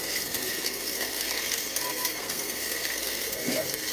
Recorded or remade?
remade